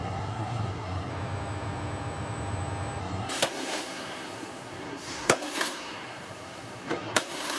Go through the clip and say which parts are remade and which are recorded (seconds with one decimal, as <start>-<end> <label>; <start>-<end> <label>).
0.0-1.1 remade; 1.1-3.0 recorded; 3.0-7.6 remade